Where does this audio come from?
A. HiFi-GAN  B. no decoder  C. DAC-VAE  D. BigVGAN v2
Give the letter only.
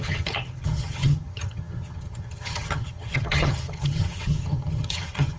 A